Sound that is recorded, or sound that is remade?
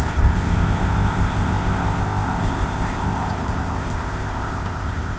remade